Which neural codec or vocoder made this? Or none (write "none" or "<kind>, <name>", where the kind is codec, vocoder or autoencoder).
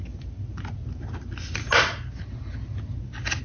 none